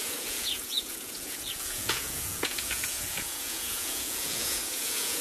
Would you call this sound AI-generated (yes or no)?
yes